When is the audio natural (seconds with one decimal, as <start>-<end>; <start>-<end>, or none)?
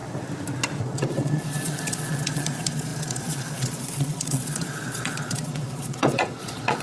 0.0-0.8